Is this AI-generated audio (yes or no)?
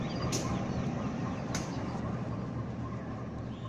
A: no